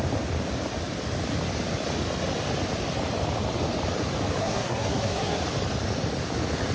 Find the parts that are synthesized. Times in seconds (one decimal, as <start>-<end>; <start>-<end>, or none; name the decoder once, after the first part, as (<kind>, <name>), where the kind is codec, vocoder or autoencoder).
4.4-5.4 (codec, SNAC)